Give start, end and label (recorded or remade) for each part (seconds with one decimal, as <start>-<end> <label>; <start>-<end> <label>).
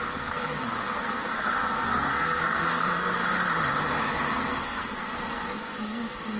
0.0-3.2 remade; 3.2-4.3 recorded; 4.3-6.4 remade